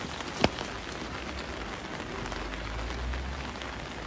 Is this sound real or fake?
real